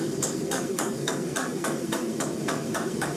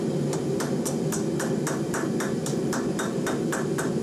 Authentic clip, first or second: second